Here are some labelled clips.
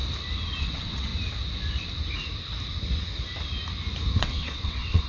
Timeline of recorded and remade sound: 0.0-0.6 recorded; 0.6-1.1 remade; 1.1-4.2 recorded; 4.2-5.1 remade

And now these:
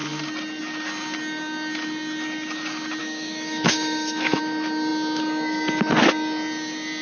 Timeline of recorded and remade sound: 0.0-3.0 recorded; 3.0-4.4 remade; 4.4-7.0 recorded